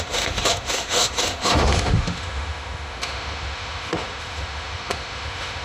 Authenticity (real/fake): fake